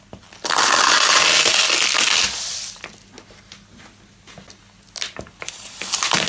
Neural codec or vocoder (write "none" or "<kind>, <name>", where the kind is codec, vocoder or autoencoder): none